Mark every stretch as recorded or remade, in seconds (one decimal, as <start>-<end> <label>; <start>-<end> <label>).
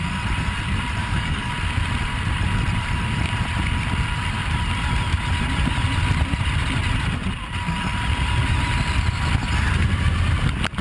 0.0-1.0 recorded; 1.0-1.5 remade; 1.5-10.8 recorded